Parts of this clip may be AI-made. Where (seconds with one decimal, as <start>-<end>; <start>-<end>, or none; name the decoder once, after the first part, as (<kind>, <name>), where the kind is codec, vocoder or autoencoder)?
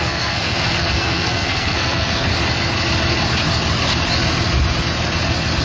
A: 0.0-2.3 (codec, SNAC)